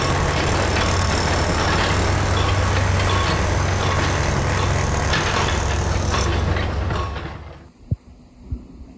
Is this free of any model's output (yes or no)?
yes